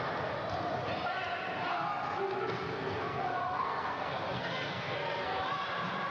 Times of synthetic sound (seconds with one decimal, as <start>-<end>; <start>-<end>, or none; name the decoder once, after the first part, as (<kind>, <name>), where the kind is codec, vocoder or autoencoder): 1.7-5.4 (codec, SNAC)